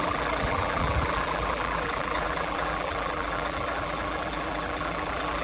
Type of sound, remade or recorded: remade